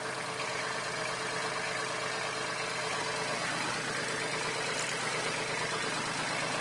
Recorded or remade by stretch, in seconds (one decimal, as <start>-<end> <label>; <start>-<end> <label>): 0.0-6.6 recorded